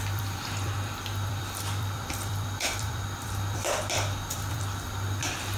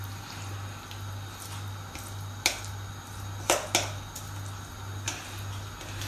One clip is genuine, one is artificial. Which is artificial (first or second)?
first